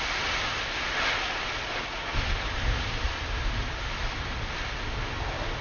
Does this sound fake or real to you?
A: real